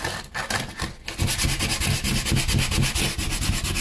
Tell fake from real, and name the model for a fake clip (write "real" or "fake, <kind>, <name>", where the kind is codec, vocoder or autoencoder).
real